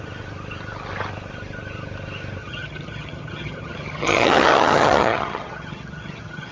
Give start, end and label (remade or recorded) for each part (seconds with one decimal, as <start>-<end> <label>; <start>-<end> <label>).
0.0-2.4 recorded; 2.4-6.5 remade